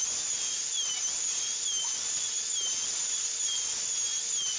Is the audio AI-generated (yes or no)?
no